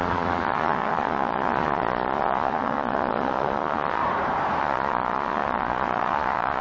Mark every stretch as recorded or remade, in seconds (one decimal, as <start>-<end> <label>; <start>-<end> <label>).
0.0-4.0 remade; 4.0-4.6 recorded; 4.6-6.6 remade